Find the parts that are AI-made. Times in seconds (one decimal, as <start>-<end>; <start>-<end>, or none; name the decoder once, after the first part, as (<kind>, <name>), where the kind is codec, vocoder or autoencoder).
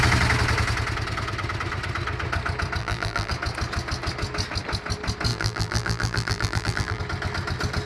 2.8-3.3 (vocoder, BigVGAN v2); 5.3-7.0